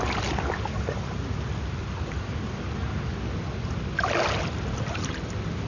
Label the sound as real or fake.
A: real